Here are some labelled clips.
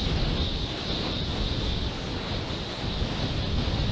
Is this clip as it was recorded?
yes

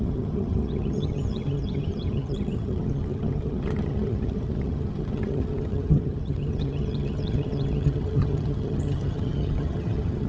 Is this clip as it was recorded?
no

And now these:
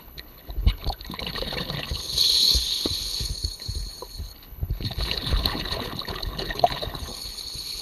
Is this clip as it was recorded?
no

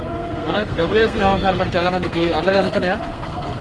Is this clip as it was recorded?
no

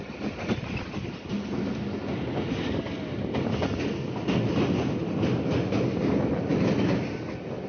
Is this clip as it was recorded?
yes